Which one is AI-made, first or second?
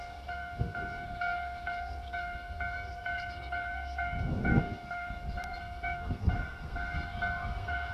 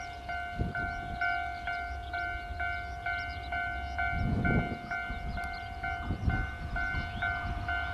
first